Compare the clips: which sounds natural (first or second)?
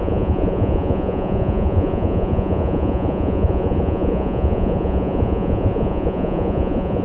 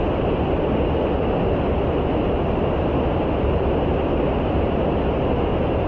second